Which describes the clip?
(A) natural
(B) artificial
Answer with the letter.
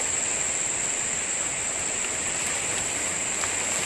A